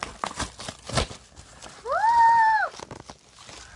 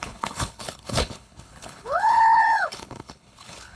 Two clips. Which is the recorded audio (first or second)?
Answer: first